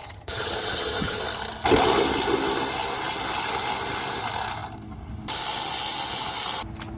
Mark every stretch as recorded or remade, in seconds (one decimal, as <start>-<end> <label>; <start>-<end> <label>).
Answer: 0.0-1.2 remade; 1.2-7.0 recorded